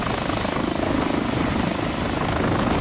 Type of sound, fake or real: real